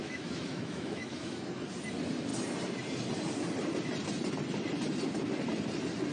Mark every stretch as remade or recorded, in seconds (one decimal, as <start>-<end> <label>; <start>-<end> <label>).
0.0-1.4 remade; 1.4-6.1 recorded